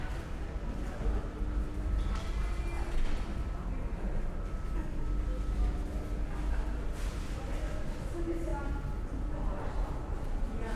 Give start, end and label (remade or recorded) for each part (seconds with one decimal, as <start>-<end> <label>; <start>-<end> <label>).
0.0-3.9 recorded; 3.9-4.5 remade; 4.5-10.8 recorded